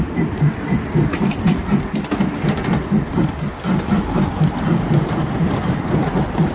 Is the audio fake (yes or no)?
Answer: no